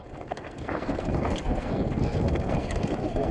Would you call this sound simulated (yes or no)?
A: yes